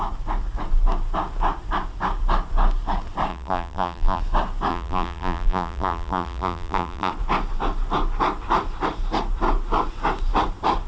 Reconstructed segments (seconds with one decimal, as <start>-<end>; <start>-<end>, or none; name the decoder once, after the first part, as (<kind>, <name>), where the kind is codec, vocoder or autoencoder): 3.3-4.2 (vocoder, BigVGAN v2); 4.7-7.1